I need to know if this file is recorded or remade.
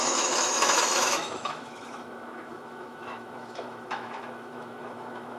remade